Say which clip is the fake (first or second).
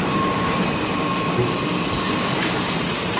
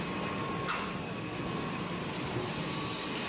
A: first